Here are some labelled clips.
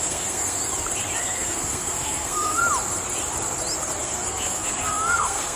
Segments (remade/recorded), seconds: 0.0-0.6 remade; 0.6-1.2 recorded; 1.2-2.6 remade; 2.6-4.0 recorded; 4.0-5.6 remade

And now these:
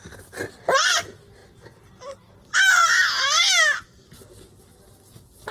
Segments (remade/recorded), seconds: 0.0-5.5 recorded

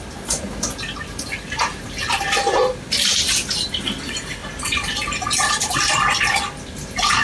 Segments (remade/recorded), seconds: 0.0-7.2 recorded

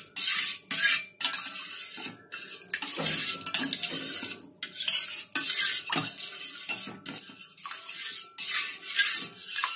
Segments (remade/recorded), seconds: 0.0-9.8 recorded

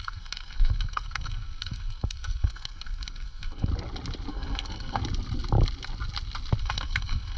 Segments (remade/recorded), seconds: 0.0-3.7 remade; 3.7-4.3 recorded; 4.3-5.0 remade; 5.0-6.6 recorded; 6.6-7.4 remade

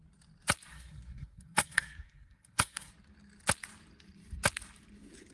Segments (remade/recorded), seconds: 0.0-0.7 recorded; 0.7-2.9 remade; 2.9-5.3 recorded

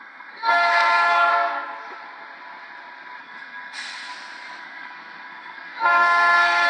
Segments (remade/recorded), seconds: 0.0-1.3 remade; 1.3-3.2 recorded; 3.2-4.1 remade; 4.1-4.6 recorded; 4.6-6.7 remade

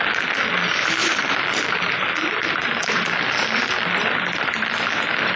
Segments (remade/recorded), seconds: 0.0-5.4 recorded